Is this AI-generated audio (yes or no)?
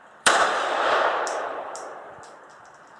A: yes